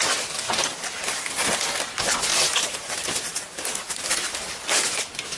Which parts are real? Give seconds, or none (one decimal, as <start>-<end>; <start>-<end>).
0.0-2.3; 3.4-5.4